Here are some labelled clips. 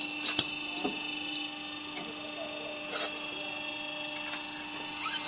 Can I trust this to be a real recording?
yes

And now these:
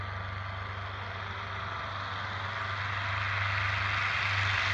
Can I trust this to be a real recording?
yes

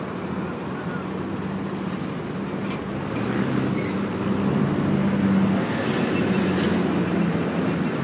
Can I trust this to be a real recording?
yes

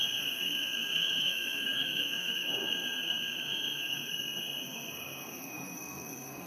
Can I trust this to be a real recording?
no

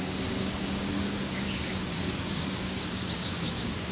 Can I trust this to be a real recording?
no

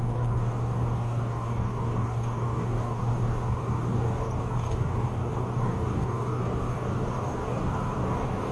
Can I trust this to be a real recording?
no